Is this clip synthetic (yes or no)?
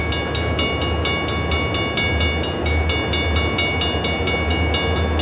no